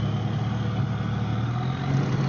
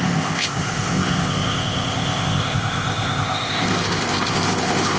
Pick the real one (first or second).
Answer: first